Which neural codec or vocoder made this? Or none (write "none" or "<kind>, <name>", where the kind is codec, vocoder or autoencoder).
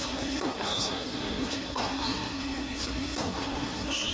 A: codec, SNAC